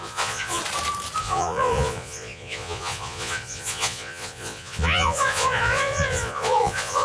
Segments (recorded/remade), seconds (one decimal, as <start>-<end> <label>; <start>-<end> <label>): 0.0-0.6 remade; 0.6-1.2 recorded; 1.2-7.0 remade